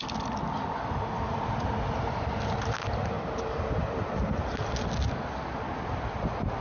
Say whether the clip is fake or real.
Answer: real